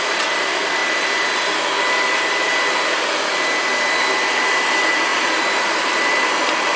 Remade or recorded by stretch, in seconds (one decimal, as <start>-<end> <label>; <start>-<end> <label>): 0.0-0.8 remade; 0.8-1.9 recorded; 1.9-2.5 remade; 2.5-4.4 recorded; 4.4-6.8 remade